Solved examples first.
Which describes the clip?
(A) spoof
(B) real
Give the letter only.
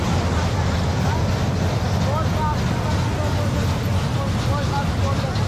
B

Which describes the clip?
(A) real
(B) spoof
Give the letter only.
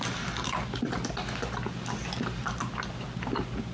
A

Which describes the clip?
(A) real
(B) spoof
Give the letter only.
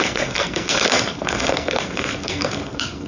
B